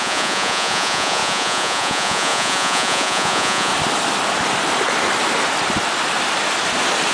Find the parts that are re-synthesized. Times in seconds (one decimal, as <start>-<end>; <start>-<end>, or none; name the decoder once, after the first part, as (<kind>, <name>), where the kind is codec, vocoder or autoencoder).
0.0-3.7 (vocoder, Vocos)